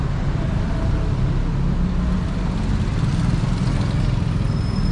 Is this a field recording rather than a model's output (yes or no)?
yes